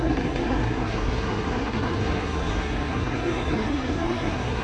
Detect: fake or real fake